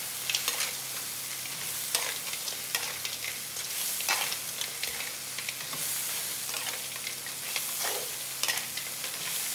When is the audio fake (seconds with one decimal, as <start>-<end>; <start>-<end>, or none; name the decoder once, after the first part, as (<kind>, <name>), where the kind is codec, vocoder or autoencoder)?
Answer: none